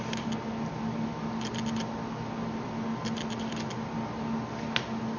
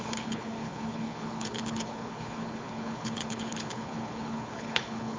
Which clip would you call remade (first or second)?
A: second